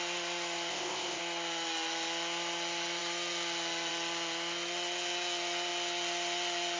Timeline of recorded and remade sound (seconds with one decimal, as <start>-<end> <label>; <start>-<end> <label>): 0.0-0.7 recorded; 0.7-1.2 remade; 1.2-6.8 recorded

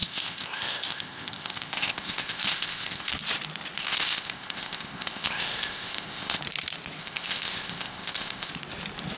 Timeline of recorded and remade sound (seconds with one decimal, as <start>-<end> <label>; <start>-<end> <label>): 0.0-3.1 remade; 3.1-3.8 recorded; 3.8-6.4 remade; 6.4-7.0 recorded; 7.0-8.5 remade; 8.5-9.2 recorded

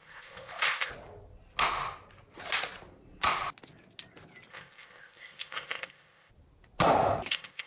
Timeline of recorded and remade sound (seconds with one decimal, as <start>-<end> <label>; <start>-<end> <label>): 0.0-0.9 remade; 0.9-4.5 recorded; 4.5-6.3 remade; 6.3-7.3 recorded; 7.3-7.7 remade